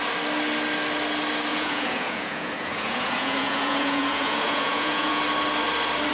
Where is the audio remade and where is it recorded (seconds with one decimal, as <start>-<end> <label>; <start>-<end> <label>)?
0.0-1.5 recorded; 1.5-5.2 remade; 5.2-6.1 recorded